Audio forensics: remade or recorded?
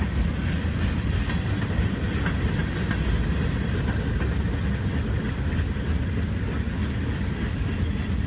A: recorded